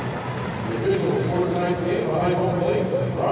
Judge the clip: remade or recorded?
recorded